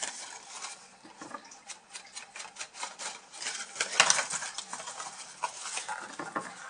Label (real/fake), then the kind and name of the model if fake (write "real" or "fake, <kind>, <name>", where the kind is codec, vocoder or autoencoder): real